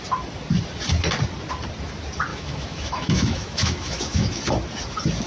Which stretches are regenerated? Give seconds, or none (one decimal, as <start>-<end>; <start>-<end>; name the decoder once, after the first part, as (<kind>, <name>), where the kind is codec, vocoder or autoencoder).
2.3-4.4 (autoencoder, DAC-VAE)